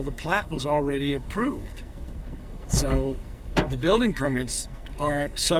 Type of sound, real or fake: fake